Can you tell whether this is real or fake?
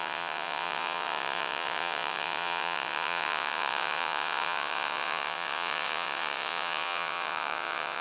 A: fake